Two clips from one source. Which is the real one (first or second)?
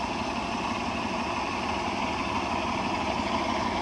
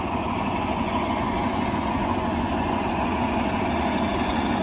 first